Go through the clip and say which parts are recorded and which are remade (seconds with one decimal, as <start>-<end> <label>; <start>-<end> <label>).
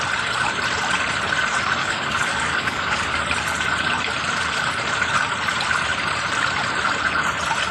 0.0-1.8 recorded; 1.8-3.2 remade; 3.2-7.7 recorded